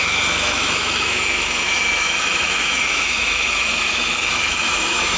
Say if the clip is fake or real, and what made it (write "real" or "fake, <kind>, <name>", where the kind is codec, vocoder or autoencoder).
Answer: fake, autoencoder, DAC-VAE